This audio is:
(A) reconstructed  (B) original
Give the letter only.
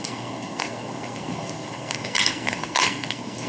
A